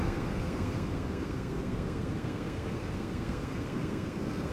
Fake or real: fake